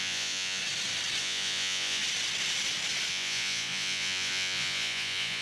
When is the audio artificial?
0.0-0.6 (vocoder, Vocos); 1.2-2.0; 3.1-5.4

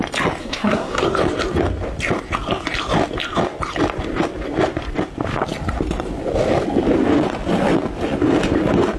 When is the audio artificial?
0.4-1.0 (codec, SNAC)

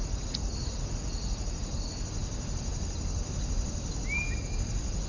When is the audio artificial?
none

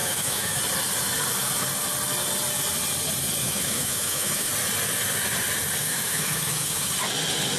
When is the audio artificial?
0.0-0.6 (autoencoder, DAC-VAE); 3.4-4.5; 5.8-6.9

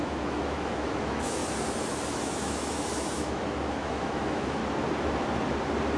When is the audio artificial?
0.0-1.4 (autoencoder, DAC-VAE); 2.1-4.6

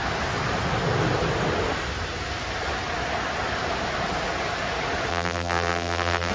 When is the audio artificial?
5.1-6.3 (vocoder, BigVGAN v2)

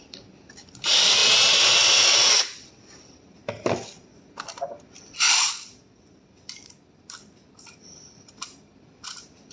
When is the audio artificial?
0.0-1.2 (vocoder, BigVGAN v2); 2.7-3.4; 5.4-9.5

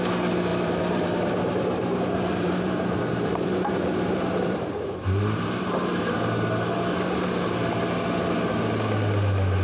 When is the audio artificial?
0.5-5.7 (vocoder, BigVGAN v2)